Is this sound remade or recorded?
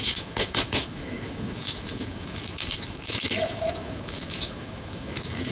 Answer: remade